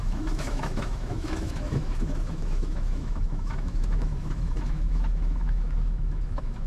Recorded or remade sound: remade